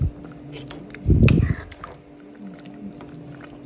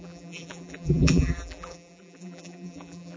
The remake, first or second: second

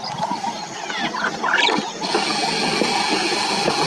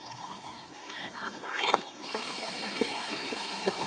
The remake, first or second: second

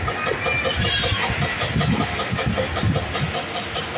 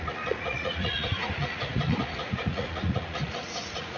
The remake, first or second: second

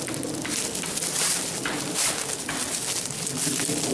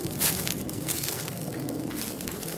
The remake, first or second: second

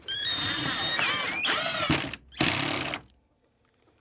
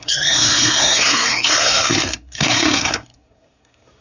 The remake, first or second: second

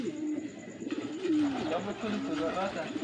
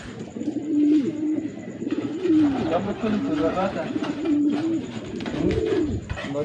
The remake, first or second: second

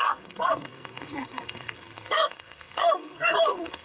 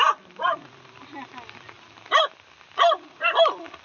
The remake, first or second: first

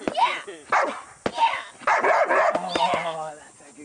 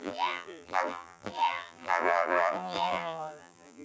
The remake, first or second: second